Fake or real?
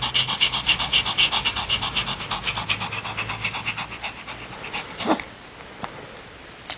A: real